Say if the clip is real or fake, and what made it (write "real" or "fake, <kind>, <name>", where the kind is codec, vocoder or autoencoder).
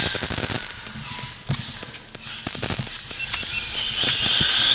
real